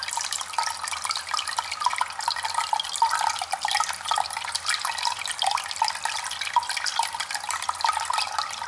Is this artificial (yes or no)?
no